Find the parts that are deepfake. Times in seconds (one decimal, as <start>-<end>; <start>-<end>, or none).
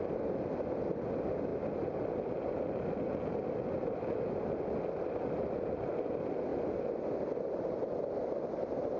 none